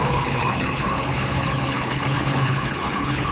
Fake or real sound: fake